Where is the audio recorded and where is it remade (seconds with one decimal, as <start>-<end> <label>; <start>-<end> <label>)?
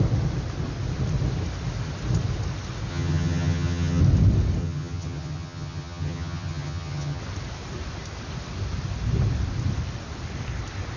0.0-2.9 recorded; 2.9-4.0 remade; 4.0-4.6 recorded; 4.6-7.2 remade; 7.2-11.0 recorded